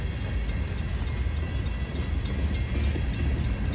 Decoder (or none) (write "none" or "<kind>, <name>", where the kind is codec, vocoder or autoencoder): none